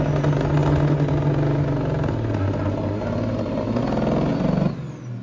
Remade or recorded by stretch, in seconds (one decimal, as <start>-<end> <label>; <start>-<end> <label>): 0.0-5.2 recorded

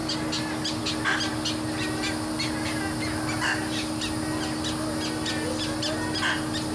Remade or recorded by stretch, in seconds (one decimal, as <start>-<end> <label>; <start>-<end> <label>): 0.0-6.7 recorded

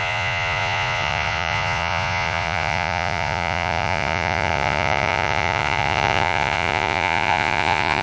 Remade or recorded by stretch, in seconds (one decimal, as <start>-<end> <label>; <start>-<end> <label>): 0.0-8.0 remade